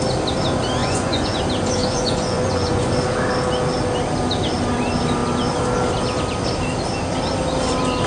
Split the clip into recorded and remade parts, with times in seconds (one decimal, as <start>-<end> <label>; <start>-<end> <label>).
0.0-0.8 recorded; 0.8-1.4 remade; 1.4-1.8 recorded; 1.8-2.9 remade; 2.9-8.1 recorded